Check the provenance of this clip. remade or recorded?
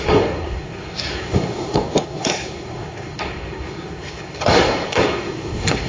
remade